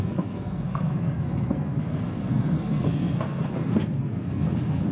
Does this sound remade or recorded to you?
remade